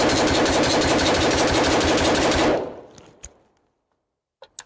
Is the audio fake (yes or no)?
no